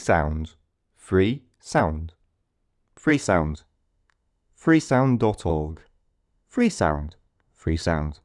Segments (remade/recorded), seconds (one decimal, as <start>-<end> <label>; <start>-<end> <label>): 0.0-3.1 recorded; 3.1-4.9 remade; 4.9-5.5 recorded; 5.5-8.2 remade